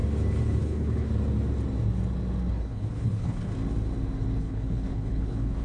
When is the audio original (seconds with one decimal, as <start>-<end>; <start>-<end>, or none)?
0.0-0.6; 1.1-2.5; 3.5-4.4